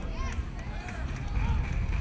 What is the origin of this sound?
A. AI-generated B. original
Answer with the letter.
B